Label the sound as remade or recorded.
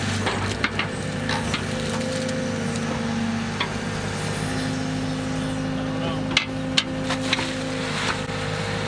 recorded